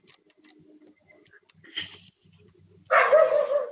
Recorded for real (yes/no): yes